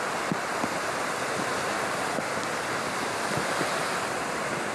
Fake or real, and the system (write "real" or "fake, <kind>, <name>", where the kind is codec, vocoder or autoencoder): real